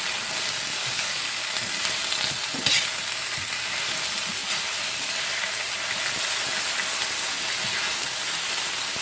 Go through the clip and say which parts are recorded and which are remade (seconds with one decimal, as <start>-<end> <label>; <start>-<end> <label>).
0.0-0.8 recorded; 0.8-1.7 remade; 1.7-9.0 recorded